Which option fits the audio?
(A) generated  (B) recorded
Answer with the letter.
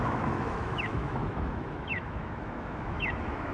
A